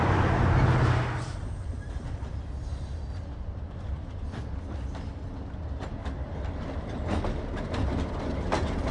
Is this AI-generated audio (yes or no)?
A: no